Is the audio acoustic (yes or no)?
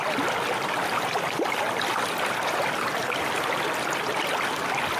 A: yes